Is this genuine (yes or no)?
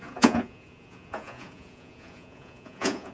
no